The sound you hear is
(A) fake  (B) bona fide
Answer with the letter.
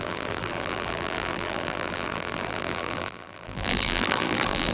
A